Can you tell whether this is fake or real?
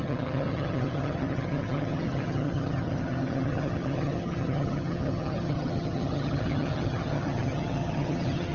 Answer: fake